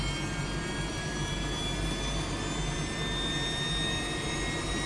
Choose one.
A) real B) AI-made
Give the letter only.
A